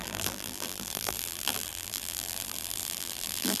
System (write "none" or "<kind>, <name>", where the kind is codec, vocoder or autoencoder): vocoder, BigVGAN v2